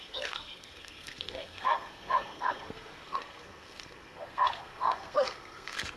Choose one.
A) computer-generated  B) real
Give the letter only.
A